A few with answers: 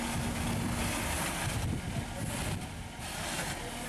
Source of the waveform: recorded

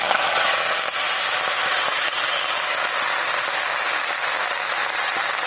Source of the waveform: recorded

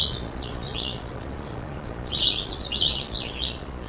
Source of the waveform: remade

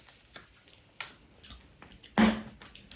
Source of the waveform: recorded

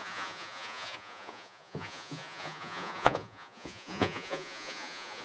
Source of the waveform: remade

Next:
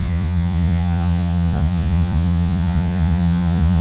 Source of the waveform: remade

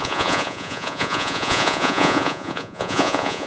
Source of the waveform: remade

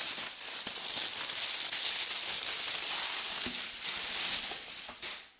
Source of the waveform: recorded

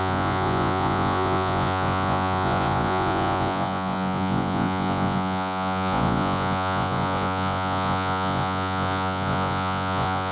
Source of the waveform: remade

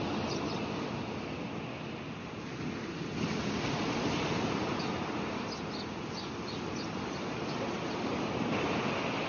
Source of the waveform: recorded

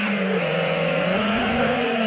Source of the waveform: remade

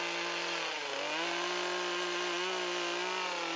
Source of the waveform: recorded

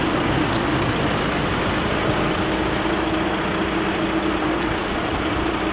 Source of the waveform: recorded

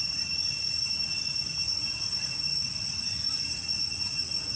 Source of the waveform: remade